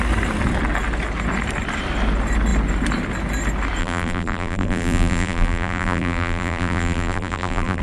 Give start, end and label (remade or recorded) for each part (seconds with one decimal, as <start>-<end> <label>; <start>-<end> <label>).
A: 0.0-3.8 recorded; 3.8-7.8 remade